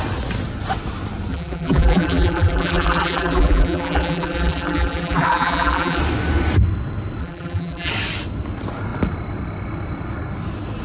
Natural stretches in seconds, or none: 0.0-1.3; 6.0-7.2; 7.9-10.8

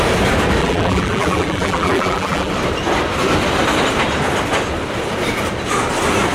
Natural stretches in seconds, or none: 0.0-0.6; 2.5-6.3

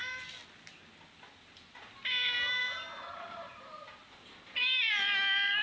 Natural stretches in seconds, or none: 0.0-2.6; 4.9-5.6

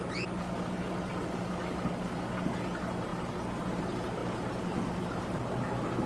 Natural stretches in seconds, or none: 0.0-6.1

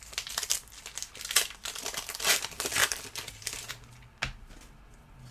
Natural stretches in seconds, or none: 0.0-2.8; 3.7-5.3